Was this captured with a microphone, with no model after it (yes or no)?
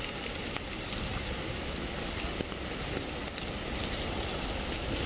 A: yes